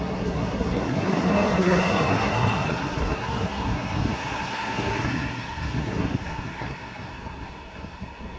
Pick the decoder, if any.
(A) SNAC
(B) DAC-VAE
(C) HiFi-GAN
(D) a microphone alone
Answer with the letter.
A